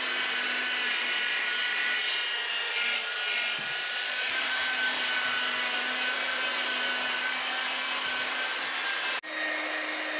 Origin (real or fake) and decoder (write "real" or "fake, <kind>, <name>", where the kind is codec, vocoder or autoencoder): real